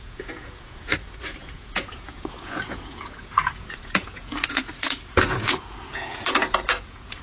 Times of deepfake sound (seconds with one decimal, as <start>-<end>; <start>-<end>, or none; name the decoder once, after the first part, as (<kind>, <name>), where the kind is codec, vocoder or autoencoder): 0.0-7.2 (vocoder, Vocos)